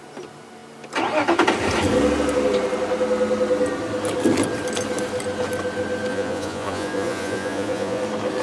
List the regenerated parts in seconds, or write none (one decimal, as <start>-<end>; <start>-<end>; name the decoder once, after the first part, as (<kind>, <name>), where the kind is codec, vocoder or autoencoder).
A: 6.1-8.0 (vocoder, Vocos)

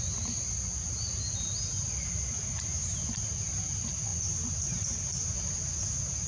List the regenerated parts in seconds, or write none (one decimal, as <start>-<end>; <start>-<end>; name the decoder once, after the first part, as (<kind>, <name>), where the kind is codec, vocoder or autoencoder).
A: none

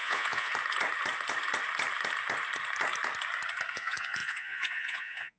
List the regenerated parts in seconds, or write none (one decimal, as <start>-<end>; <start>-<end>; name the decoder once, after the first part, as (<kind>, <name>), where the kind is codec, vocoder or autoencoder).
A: 0.0-0.5 (vocoder, Vocos); 3.7-5.4